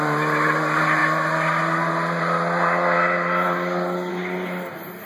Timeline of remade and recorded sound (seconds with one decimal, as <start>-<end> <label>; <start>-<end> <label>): 0.0-5.1 recorded